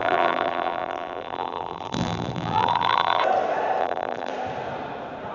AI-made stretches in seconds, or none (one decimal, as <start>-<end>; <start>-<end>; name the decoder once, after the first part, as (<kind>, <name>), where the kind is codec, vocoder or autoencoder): 0.0-3.2 (vocoder, BigVGAN v2); 3.8-4.3

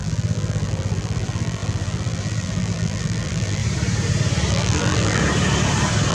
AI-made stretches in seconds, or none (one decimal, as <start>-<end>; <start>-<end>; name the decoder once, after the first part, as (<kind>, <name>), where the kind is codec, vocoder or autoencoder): 0.0-3.6 (vocoder, BigVGAN v2); 4.5-5.2

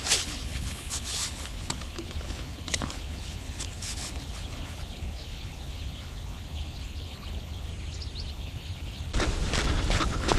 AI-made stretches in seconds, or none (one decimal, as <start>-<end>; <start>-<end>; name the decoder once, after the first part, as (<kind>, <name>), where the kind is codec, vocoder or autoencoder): 0.0-7.7 (codec, HILCodec); 8.3-9.1; 9.9-10.4

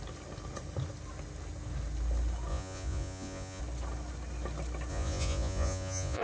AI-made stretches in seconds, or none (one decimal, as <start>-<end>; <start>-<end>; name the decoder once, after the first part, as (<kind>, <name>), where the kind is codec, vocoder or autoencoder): 2.5-3.6 (vocoder, Vocos); 4.9-6.2

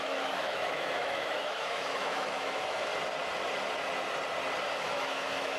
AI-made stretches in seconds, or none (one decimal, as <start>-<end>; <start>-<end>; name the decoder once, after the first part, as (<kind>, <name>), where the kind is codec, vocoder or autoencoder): 0.0-2.9 (autoencoder, DAC-VAE); 4.8-5.6

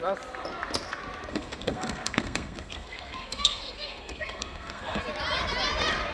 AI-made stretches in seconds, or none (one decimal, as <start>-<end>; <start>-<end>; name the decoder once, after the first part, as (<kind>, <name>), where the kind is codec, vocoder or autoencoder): 1.3-5.0 (codec, SNAC)

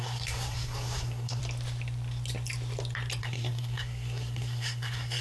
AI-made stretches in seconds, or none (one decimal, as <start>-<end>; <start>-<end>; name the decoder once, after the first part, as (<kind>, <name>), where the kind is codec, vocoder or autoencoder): 0.0-1.4 (codec, SNAC); 3.2-5.2

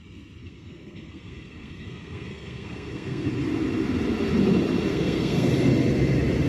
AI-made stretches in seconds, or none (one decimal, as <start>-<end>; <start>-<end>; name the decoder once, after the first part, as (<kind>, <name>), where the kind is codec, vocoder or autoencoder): 0.4-3.3 (codec, SNAC); 4.9-5.5